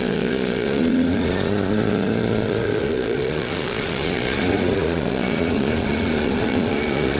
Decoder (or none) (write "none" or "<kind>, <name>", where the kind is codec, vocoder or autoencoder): vocoder, Vocos